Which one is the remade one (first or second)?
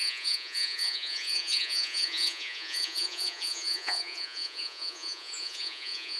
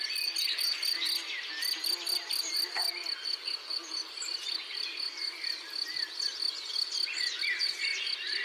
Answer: first